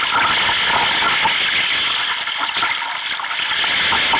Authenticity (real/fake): real